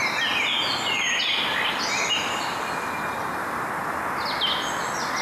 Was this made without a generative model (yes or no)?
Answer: yes